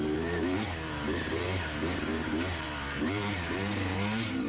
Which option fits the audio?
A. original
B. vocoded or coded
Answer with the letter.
B